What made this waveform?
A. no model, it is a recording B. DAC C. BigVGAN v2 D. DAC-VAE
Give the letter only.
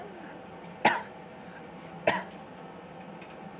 A